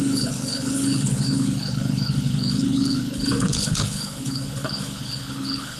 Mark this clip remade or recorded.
remade